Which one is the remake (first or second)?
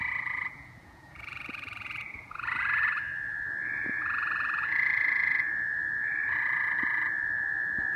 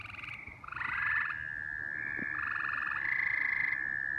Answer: first